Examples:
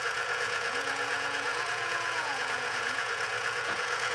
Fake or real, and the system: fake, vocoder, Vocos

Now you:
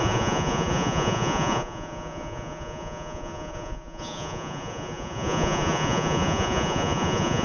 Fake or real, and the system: fake, vocoder, Vocos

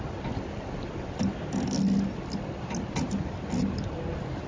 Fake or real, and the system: real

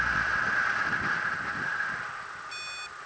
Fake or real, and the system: real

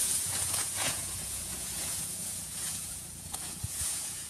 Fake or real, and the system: fake, vocoder, Vocos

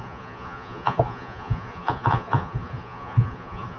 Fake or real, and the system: fake, vocoder, Vocos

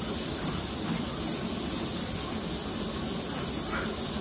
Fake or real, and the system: real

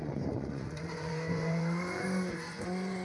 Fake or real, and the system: fake, vocoder, Vocos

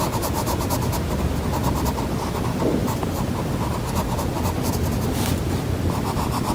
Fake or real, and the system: real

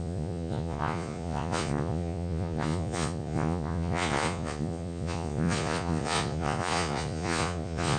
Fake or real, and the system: fake, vocoder, Vocos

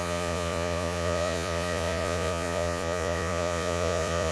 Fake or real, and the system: fake, vocoder, Vocos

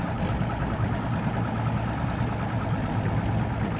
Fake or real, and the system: real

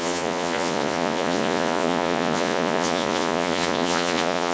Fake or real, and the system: fake, vocoder, Vocos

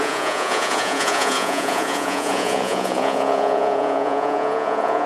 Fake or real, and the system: fake, vocoder, Vocos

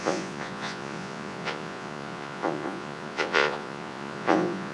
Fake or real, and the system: fake, vocoder, Vocos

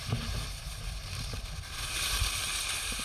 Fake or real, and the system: real